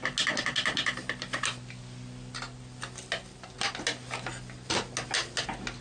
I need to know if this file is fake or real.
real